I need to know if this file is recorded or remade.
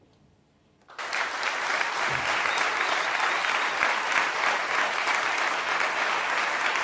recorded